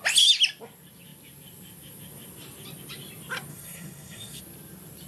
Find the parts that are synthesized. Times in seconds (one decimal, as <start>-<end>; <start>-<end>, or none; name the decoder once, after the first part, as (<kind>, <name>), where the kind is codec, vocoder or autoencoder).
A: 3.5-4.4 (codec, SNAC)